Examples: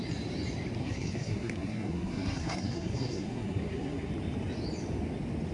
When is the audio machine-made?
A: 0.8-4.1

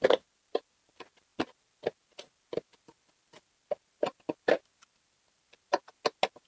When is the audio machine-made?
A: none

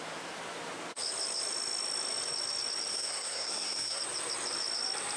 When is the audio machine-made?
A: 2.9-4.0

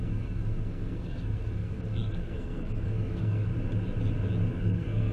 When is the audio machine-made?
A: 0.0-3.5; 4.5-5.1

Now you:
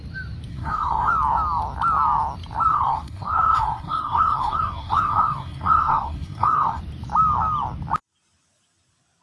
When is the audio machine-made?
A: 0.5-1.1; 2.7-6.8